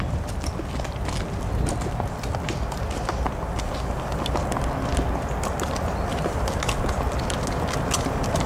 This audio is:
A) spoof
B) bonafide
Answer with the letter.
B